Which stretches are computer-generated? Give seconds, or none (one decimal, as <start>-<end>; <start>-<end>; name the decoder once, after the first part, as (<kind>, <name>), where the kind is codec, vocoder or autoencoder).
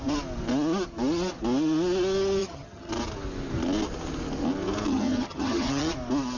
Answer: 2.4-2.9 (vocoder, HiFi-GAN); 4.9-5.9